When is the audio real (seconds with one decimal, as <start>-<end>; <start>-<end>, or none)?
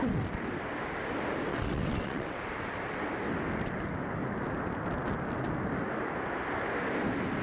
0.0-1.5; 2.4-7.4